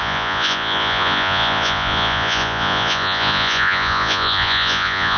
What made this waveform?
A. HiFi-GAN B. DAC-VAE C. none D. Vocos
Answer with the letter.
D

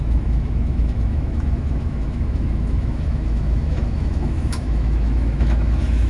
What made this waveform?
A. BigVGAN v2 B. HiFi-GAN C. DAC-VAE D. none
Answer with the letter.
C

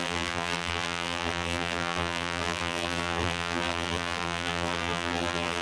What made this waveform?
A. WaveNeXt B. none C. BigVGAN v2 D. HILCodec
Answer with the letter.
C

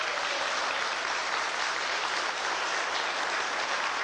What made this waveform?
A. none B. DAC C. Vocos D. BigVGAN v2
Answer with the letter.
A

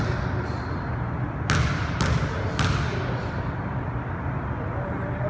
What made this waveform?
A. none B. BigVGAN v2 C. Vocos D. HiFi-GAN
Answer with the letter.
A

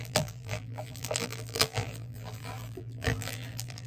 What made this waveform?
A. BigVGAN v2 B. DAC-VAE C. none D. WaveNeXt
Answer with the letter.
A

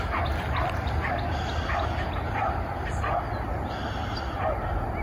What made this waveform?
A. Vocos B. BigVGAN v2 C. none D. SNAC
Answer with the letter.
C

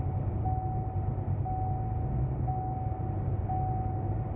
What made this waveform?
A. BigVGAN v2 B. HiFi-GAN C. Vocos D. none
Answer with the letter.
D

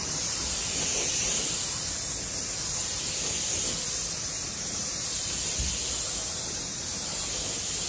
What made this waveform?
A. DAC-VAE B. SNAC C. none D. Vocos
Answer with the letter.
C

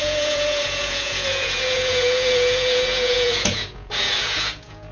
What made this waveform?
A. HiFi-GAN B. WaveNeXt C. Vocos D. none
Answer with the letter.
C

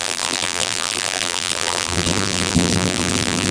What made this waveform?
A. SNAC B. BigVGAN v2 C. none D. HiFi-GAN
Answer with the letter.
B